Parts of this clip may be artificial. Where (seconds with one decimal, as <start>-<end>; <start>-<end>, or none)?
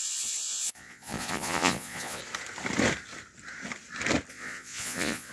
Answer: 0.0-2.2; 4.3-5.3